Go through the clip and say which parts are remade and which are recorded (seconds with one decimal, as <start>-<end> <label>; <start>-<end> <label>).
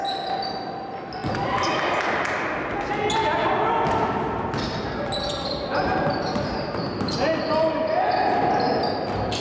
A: 0.0-9.4 recorded